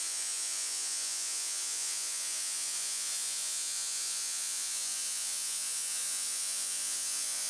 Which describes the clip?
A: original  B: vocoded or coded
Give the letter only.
B